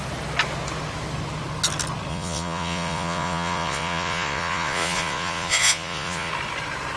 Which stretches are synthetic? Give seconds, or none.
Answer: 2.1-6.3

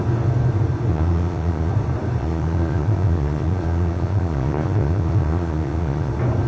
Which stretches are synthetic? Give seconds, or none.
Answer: 0.9-1.7; 2.2-6.1